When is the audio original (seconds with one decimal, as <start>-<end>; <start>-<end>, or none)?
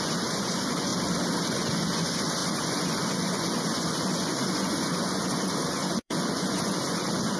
0.9-1.5